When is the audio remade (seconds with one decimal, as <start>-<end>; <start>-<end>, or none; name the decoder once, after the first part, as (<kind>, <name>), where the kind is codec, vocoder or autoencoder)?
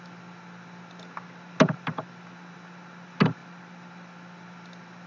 none